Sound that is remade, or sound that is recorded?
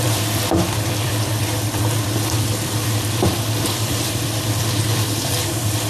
remade